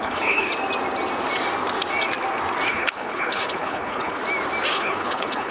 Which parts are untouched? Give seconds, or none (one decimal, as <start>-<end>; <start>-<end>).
0.5-2.7; 4.2-4.7